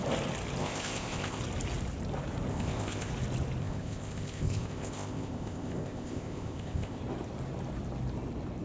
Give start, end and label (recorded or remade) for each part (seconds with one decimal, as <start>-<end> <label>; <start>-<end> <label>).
0.0-0.6 recorded; 0.6-1.4 remade; 1.4-2.5 recorded; 2.5-3.1 remade; 3.1-3.6 recorded; 3.6-7.0 remade; 7.0-8.6 recorded